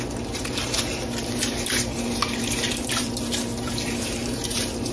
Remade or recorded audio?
remade